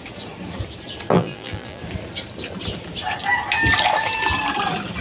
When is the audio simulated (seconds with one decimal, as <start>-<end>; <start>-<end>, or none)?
1.1-1.8